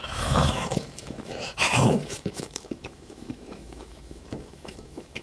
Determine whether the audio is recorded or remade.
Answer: remade